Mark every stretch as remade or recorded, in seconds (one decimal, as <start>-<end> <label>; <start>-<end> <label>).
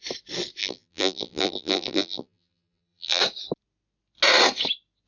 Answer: 0.0-0.6 recorded; 0.6-3.2 remade; 3.2-5.1 recorded